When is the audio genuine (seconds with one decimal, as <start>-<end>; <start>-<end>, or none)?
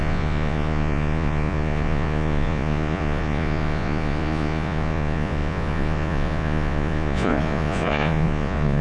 none